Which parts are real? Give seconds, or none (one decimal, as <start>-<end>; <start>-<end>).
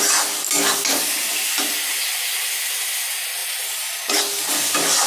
0.0-5.1